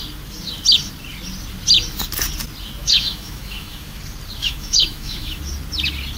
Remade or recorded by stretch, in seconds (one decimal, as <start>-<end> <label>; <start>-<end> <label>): 0.0-2.8 recorded; 2.8-4.0 remade; 4.0-4.4 recorded; 4.4-5.4 remade; 5.4-6.2 recorded